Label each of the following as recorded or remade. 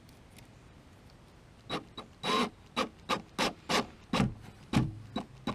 recorded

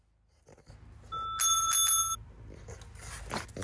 recorded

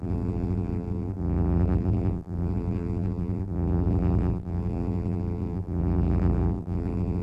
remade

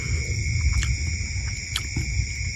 recorded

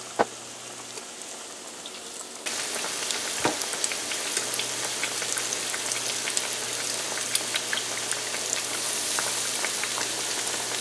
recorded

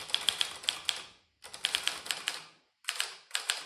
recorded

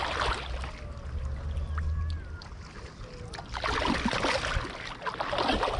recorded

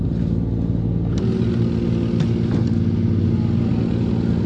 recorded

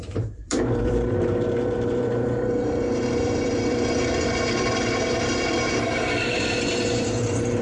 remade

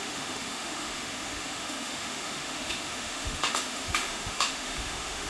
remade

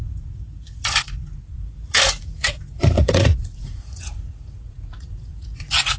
remade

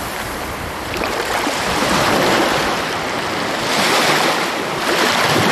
remade